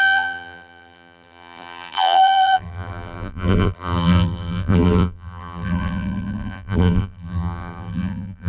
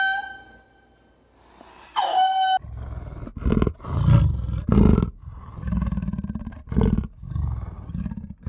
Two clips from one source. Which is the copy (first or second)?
first